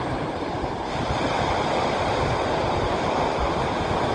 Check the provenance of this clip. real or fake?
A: fake